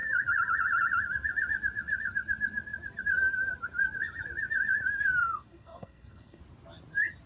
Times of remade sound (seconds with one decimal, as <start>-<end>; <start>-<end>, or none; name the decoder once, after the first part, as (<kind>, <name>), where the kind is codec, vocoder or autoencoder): 5.2-6.4 (codec, SNAC)